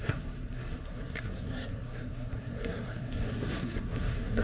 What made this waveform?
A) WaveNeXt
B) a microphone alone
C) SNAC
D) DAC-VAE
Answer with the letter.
C